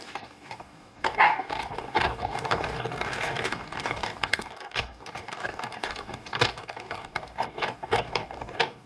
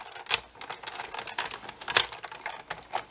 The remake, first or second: first